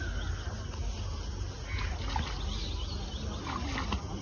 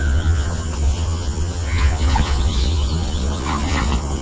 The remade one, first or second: second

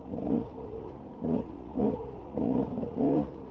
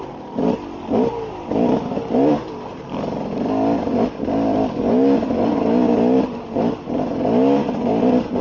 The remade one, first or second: first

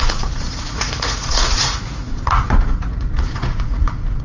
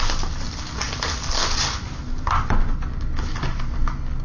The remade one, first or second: first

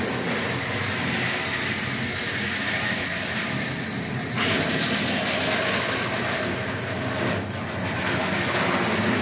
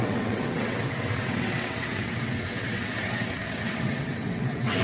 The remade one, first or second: second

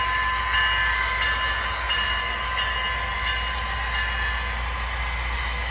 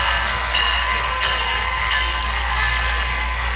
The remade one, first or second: second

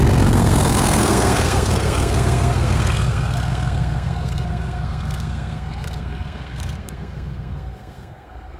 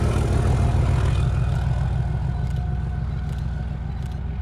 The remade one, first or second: first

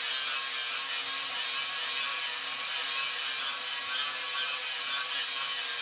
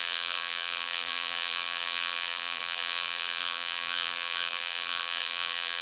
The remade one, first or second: second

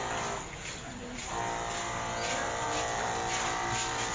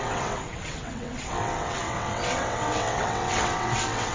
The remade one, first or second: second